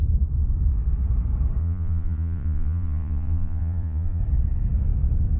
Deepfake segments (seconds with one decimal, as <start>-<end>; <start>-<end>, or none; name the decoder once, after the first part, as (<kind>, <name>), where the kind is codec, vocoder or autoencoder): 1.6-4.2 (vocoder, Vocos)